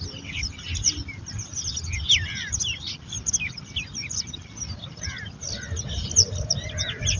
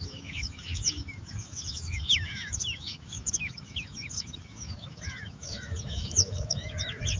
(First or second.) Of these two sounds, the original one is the first